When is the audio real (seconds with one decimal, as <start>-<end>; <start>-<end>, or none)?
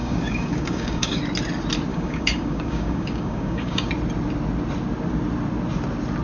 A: 1.2-1.9; 3.9-6.2